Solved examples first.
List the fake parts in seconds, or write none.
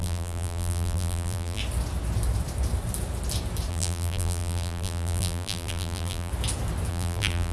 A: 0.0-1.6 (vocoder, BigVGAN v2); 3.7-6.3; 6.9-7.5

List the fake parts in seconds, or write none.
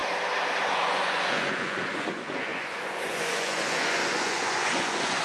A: 0.7-5.2 (vocoder, Vocos)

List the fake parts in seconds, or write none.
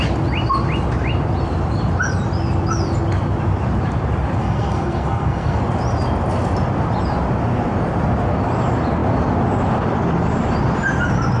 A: 4.4-5.6 (codec, SNAC)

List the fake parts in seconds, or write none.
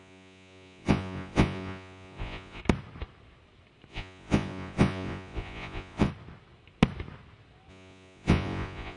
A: 0.0-2.6 (vocoder, Vocos); 3.9-6.1; 7.7-9.0